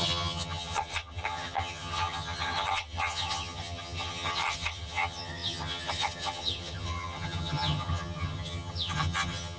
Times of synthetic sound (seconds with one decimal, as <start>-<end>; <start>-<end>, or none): 0.0-9.6

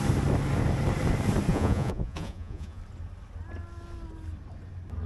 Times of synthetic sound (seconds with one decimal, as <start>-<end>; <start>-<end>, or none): 1.5-2.8

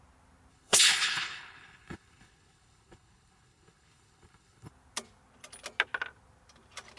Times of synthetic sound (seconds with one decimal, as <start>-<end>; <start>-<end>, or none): 0.5-4.7

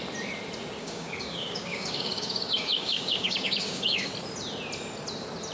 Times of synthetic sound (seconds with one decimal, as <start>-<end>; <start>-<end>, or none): 0.8-4.1

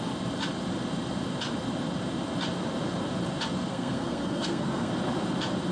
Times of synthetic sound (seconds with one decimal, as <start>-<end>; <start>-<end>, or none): 3.7-4.9

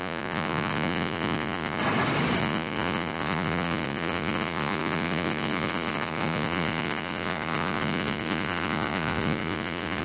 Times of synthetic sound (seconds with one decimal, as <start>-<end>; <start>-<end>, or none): 0.0-1.8; 2.4-10.0

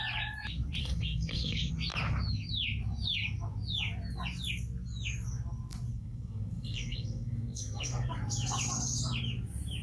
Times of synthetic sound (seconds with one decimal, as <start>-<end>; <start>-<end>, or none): 0.8-1.7; 5.9-8.1